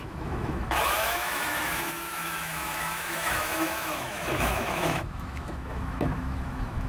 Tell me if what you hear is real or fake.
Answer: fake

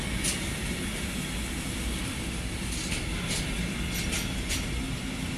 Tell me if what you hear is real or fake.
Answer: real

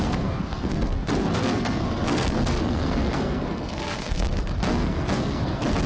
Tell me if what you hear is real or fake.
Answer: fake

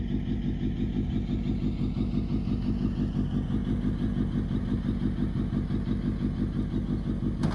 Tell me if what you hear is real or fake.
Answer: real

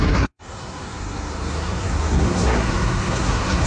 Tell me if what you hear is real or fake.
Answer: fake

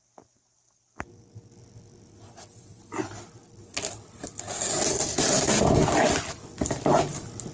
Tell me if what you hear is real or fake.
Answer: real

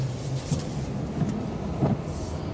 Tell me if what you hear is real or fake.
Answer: fake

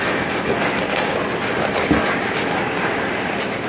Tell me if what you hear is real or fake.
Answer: real